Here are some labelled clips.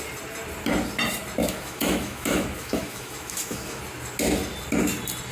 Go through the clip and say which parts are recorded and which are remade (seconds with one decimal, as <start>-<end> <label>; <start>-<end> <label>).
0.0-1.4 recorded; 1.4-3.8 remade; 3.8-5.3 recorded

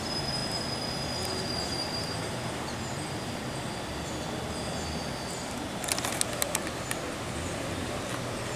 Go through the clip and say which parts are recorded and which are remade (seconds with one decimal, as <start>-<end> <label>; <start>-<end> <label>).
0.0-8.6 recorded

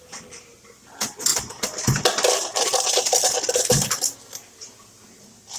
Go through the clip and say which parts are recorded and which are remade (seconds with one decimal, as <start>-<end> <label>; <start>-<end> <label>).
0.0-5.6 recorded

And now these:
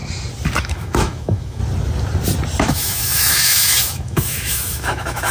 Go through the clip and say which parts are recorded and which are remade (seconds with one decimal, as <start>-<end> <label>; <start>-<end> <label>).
0.0-0.6 recorded; 0.6-1.6 remade; 1.6-2.6 recorded; 2.6-5.3 remade

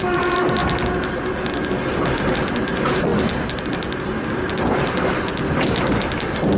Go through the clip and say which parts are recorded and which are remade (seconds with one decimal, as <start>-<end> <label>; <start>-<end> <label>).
0.0-6.6 recorded